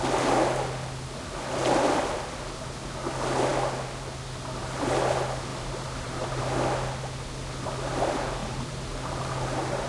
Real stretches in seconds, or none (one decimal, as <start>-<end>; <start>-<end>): 0.0-5.5; 6.4-8.4